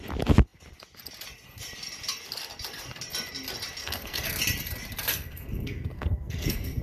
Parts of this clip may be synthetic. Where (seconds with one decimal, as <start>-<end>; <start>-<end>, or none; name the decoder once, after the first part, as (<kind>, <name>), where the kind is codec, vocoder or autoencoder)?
3.8-4.4 (codec, SNAC); 5.1-6.8